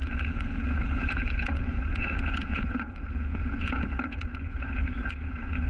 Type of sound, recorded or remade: remade